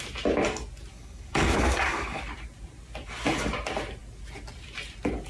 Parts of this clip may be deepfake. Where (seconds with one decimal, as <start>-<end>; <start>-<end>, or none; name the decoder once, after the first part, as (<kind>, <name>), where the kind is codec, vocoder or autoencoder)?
0.9-2.2 (codec, DAC)

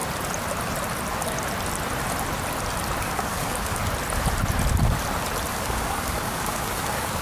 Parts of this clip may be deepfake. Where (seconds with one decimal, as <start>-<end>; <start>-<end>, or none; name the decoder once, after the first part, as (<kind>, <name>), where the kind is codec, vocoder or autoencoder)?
3.0-3.8 (codec, DAC); 5.5-7.2